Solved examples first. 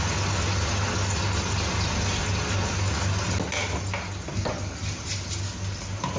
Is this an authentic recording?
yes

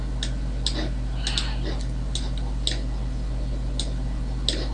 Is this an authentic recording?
yes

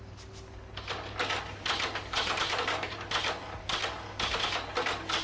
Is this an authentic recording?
yes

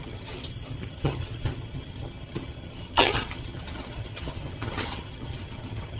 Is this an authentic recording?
no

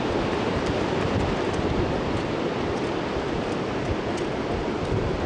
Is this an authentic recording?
yes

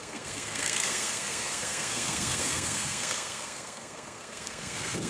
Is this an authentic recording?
no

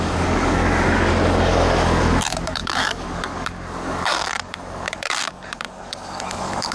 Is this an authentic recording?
no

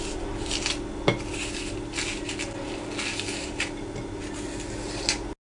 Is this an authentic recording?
yes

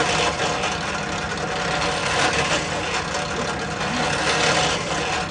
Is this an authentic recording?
yes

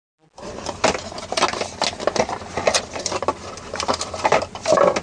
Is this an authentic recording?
yes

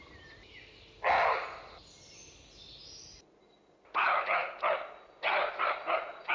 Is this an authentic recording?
yes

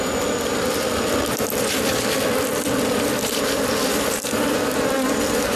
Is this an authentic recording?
yes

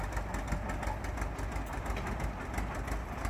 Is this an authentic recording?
yes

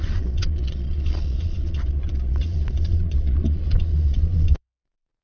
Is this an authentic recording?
no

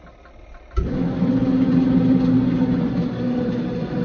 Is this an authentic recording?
yes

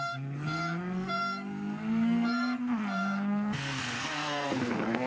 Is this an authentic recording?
no